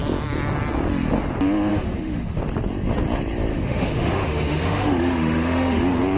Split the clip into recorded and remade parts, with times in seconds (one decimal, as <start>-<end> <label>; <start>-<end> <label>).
0.0-1.7 recorded; 1.7-2.4 remade; 2.4-3.5 recorded; 3.5-5.8 remade; 5.8-6.2 recorded